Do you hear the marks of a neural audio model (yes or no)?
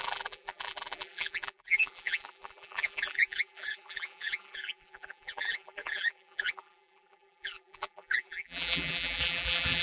yes